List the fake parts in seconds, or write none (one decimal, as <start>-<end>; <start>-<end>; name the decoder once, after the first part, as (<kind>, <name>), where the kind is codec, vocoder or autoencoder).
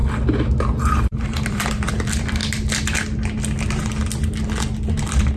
0.6-2.4 (vocoder, BigVGAN v2); 4.9-5.4